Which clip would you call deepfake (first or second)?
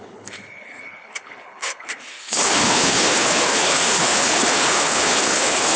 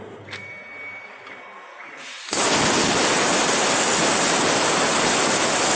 first